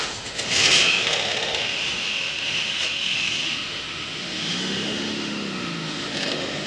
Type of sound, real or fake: fake